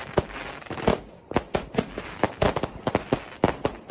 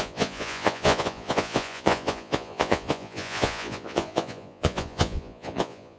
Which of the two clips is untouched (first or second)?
first